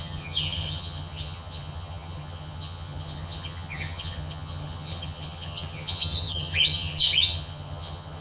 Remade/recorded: remade